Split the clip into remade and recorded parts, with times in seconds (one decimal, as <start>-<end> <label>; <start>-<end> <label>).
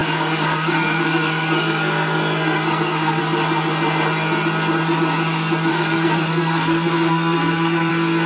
0.0-3.2 remade; 3.2-5.7 recorded; 5.7-7.9 remade; 7.9-8.3 recorded